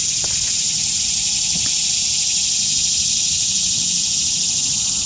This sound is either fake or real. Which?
real